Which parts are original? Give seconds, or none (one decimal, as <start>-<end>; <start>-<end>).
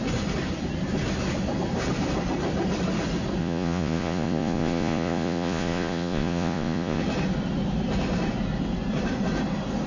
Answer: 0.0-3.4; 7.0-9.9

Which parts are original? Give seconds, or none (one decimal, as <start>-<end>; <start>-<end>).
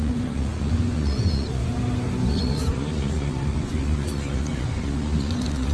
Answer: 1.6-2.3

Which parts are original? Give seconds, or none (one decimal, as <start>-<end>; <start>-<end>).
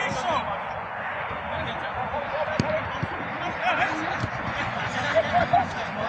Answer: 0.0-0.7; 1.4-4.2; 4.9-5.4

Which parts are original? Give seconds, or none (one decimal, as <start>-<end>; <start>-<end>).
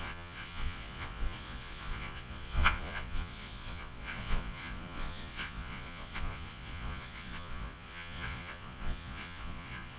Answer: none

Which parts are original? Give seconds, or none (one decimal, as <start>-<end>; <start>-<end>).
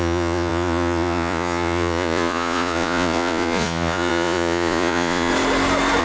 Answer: 5.3-6.0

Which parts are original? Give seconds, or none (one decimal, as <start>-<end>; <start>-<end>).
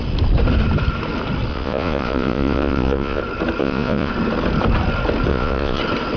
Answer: 0.0-1.5; 3.2-3.6; 4.1-5.3; 5.8-6.2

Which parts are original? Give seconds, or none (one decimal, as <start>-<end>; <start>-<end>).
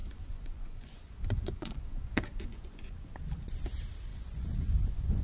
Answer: 3.1-4.1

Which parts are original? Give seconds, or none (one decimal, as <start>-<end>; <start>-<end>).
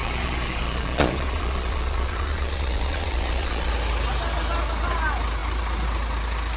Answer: 3.7-6.6